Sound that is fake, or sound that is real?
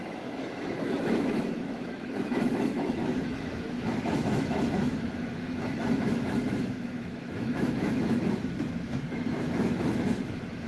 fake